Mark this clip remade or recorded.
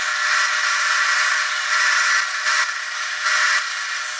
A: recorded